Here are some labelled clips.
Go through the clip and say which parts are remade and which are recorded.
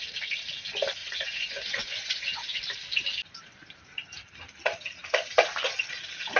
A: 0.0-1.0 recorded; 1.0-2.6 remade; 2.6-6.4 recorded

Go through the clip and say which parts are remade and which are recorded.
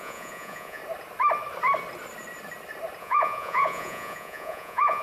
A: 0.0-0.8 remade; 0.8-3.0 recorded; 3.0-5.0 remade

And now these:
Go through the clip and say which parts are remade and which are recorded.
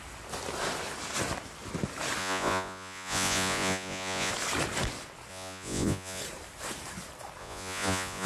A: 0.0-2.2 recorded; 2.2-4.3 remade; 4.3-5.3 recorded; 5.3-6.2 remade; 6.2-7.4 recorded; 7.4-8.3 remade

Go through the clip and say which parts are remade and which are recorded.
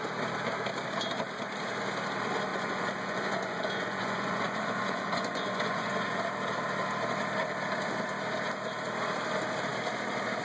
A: 0.0-2.5 recorded; 2.5-6.2 remade; 6.2-10.4 recorded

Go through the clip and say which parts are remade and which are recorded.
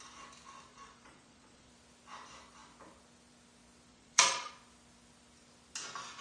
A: 0.0-0.7 recorded; 0.7-1.7 remade; 1.7-3.9 recorded; 3.9-4.5 remade; 4.5-6.2 recorded